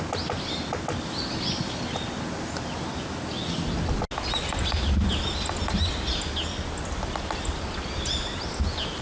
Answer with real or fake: real